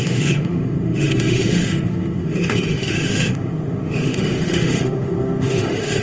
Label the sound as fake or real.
fake